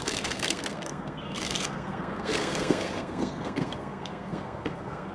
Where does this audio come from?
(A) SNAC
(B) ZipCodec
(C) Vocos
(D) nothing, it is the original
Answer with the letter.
A